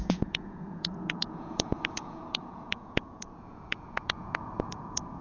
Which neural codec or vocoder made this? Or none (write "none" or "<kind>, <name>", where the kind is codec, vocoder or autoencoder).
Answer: vocoder, Vocos